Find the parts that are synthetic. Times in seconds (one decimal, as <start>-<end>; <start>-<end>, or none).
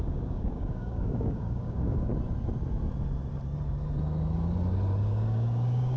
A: 0.0-2.1; 5.0-6.0